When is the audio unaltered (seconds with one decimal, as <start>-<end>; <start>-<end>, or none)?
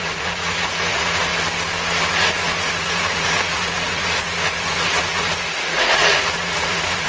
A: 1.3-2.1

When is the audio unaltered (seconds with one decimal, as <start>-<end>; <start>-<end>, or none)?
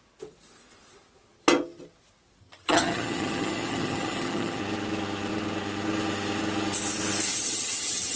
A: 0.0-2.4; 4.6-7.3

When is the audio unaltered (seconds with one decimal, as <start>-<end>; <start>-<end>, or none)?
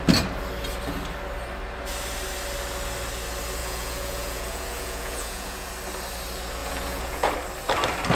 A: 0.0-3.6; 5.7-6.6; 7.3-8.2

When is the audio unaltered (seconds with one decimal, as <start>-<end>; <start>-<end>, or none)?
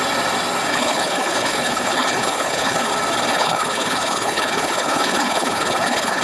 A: 0.0-0.7; 2.9-3.3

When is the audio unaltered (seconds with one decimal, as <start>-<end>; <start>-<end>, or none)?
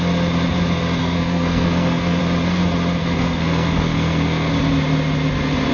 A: 0.0-1.0; 2.2-3.0; 4.5-5.7